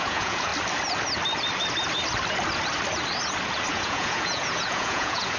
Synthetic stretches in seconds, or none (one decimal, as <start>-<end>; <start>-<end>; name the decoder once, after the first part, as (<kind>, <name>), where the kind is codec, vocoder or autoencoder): 0.0-0.5 (vocoder, Vocos); 3.7-5.4